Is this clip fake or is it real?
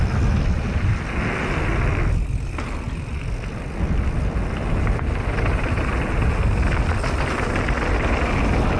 real